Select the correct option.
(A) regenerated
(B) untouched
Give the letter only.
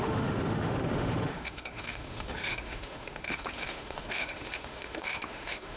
A